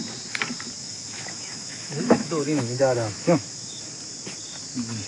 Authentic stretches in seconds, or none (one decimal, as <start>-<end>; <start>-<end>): 0.0-0.8; 3.9-5.1